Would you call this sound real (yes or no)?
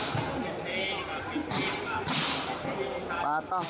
yes